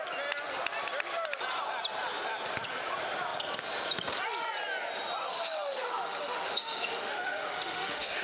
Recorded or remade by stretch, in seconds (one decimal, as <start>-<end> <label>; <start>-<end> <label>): 0.0-5.3 recorded; 5.3-8.2 remade